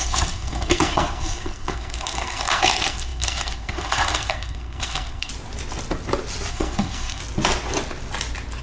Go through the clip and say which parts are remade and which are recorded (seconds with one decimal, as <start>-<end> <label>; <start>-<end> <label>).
0.0-5.3 remade; 5.3-6.5 recorded; 6.5-7.2 remade; 7.2-8.6 recorded